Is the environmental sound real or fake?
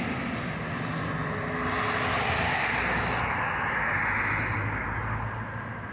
real